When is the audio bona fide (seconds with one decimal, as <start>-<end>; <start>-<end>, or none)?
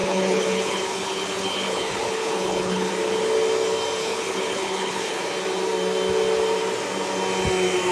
2.9-4.0; 5.2-7.9